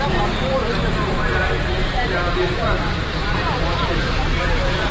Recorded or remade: remade